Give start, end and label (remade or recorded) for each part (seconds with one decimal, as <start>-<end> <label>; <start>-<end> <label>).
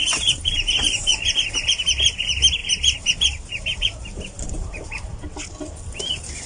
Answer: 0.0-1.1 remade; 1.1-1.7 recorded; 1.7-2.6 remade; 2.6-3.5 recorded; 3.5-5.1 remade; 5.1-6.0 recorded; 6.0-6.5 remade